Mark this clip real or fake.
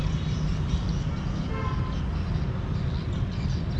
real